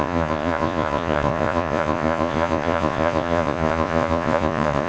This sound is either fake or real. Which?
fake